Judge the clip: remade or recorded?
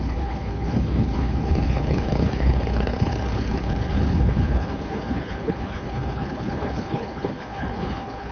remade